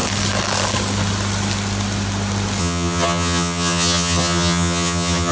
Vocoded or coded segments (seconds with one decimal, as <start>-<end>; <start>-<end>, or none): 2.6-5.3